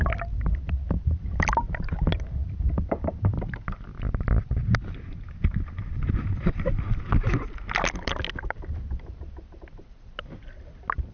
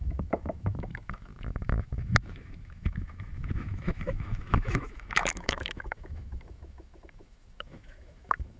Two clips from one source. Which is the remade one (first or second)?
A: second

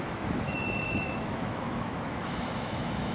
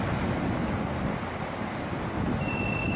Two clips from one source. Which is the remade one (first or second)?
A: first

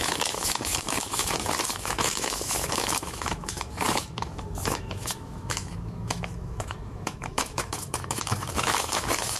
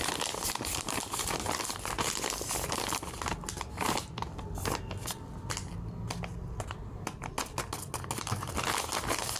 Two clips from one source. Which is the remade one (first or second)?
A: first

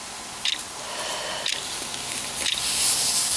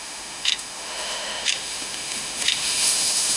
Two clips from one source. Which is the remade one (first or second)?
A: second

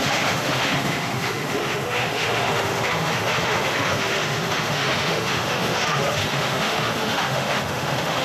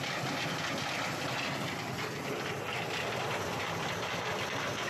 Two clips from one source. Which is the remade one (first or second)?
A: first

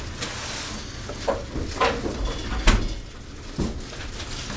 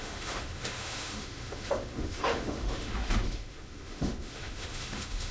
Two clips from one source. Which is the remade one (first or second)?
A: second